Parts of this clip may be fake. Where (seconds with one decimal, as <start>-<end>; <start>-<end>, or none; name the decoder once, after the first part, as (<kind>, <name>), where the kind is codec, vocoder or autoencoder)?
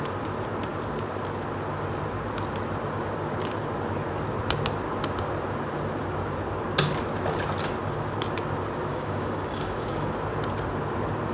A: 8.9-10.1 (codec, DAC)